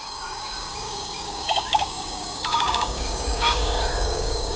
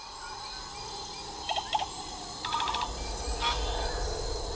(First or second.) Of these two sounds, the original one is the second